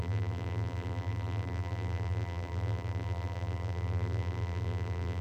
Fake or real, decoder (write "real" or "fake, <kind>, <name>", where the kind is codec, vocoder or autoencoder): fake, vocoder, BigVGAN v2